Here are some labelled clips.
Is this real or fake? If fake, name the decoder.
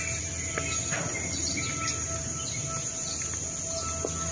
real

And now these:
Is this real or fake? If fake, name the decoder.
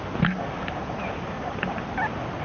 real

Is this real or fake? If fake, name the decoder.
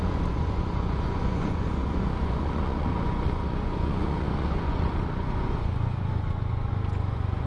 fake, vocoder, Vocos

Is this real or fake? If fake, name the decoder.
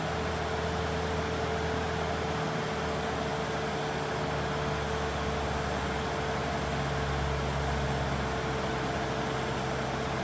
real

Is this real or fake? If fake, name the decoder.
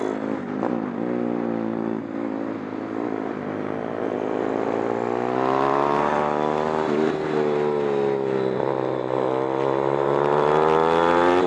real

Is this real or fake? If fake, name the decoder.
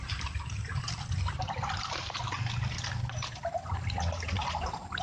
real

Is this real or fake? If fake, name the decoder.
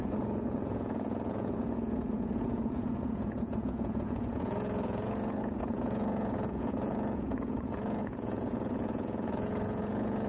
fake, vocoder, Vocos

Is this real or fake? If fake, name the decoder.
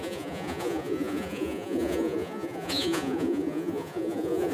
fake, vocoder, Vocos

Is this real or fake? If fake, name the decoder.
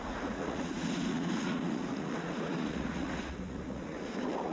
fake, vocoder, Vocos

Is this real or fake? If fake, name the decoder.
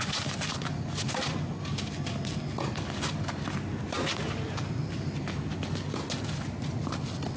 real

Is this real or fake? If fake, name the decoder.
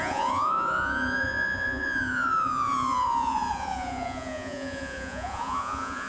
fake, vocoder, Vocos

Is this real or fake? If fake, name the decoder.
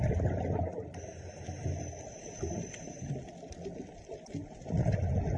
real